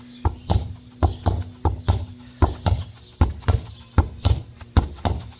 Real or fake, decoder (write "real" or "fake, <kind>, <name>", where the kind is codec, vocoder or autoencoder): real